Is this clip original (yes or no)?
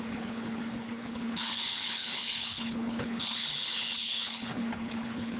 no